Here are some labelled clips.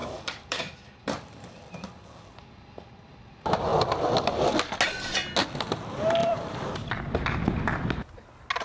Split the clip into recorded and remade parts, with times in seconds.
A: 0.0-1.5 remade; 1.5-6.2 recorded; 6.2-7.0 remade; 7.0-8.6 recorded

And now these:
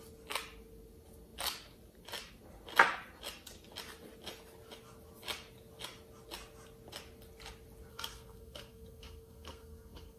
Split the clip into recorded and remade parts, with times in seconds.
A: 0.0-7.9 recorded; 7.9-10.2 remade

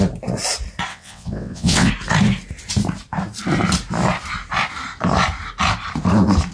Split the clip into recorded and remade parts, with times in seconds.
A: 0.0-0.9 recorded; 0.9-1.9 remade; 1.9-6.5 recorded

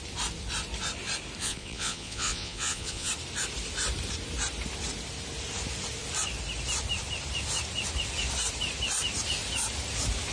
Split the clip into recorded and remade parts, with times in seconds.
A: 0.0-1.4 recorded; 1.4-3.1 remade; 3.1-10.3 recorded

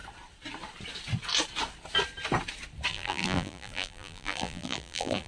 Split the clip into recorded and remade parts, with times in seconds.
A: 0.0-2.9 recorded; 2.9-5.3 remade

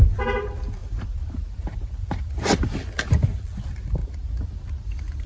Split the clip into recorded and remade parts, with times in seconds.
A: 0.0-0.8 recorded; 0.8-2.7 remade; 2.7-4.0 recorded; 4.0-4.5 remade; 4.5-5.3 recorded